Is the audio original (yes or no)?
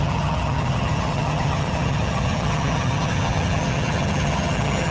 no